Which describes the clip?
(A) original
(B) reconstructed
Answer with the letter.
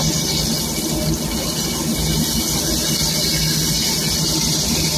A